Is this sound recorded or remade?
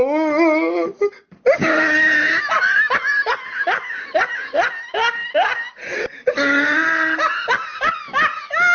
recorded